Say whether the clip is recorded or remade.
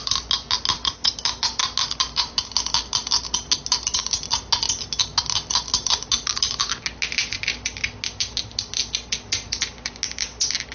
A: recorded